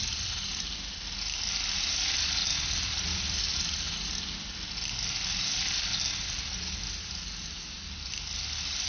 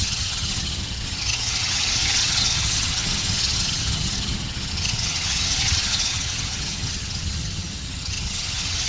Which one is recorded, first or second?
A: first